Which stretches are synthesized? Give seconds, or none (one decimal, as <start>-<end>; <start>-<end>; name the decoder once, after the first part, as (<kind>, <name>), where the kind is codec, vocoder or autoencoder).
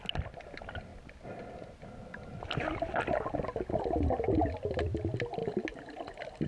none